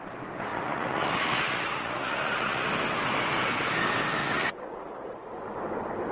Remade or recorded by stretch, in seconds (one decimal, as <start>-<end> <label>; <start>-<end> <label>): 0.0-0.5 recorded; 0.5-2.7 remade; 2.7-4.2 recorded; 4.2-5.4 remade; 5.4-6.1 recorded